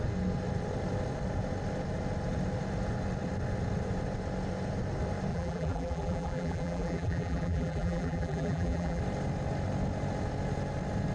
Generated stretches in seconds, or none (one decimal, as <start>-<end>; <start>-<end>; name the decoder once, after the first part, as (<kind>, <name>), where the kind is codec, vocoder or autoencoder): 5.3-9.0 (vocoder, BigVGAN v2)